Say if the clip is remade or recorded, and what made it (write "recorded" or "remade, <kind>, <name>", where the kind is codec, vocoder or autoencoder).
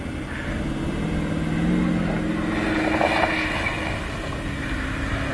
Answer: recorded